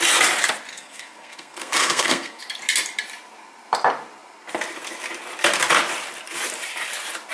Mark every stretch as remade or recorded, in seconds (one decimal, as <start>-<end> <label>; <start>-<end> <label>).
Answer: 0.0-0.7 recorded; 0.7-2.4 remade; 2.4-7.3 recorded